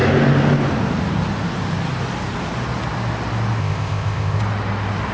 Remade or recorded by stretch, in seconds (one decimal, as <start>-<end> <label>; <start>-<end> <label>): 0.0-3.6 recorded; 3.6-4.4 remade; 4.4-5.1 recorded